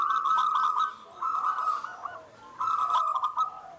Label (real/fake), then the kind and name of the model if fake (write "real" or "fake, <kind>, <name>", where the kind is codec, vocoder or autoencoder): real